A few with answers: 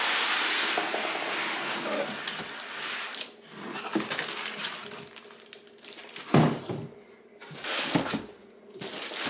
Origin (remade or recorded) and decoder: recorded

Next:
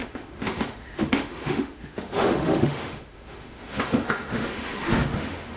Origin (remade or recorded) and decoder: remade, autoencoder, DAC-VAE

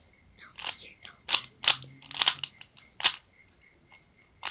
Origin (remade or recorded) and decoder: recorded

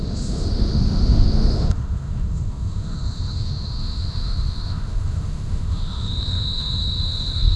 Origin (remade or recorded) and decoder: remade, autoencoder, DAC-VAE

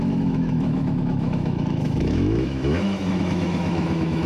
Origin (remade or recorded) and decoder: remade, autoencoder, DAC-VAE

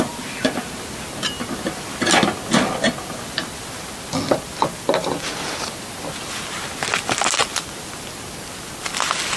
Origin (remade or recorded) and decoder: recorded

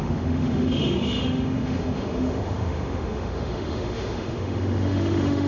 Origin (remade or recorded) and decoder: remade, autoencoder, DAC-VAE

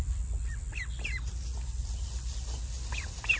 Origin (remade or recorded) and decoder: recorded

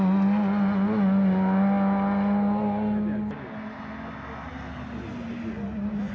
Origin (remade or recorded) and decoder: recorded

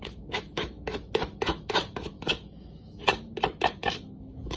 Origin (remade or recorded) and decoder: remade, autoencoder, DAC-VAE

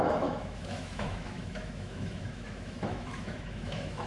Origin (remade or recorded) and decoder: remade, autoencoder, DAC-VAE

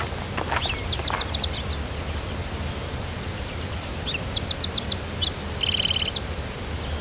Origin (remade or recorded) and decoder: recorded